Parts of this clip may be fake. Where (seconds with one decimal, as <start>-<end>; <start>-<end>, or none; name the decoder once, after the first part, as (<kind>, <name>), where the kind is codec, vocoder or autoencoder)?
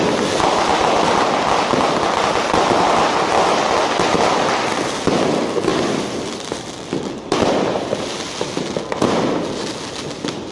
5.7-6.7 (vocoder, BigVGAN v2)